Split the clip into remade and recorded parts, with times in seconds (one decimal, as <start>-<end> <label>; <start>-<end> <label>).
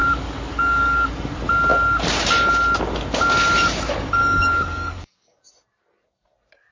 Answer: 0.0-1.1 remade; 1.1-4.2 recorded; 4.2-5.5 remade; 5.5-6.7 recorded